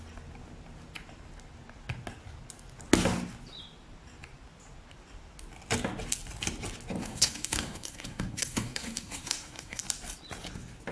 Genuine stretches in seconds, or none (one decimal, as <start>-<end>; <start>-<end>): 0.0-7.0; 9.8-10.9